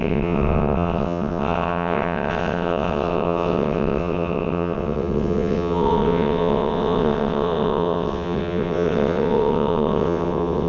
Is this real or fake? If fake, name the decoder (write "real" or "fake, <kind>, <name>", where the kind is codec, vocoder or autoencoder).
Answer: fake, vocoder, WaveNeXt